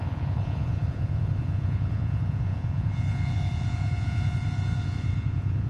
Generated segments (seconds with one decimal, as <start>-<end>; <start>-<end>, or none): 0.0-5.7